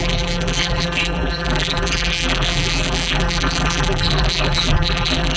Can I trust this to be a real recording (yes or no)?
no